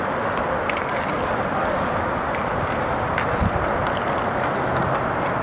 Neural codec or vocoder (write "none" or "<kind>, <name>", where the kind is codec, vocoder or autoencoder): none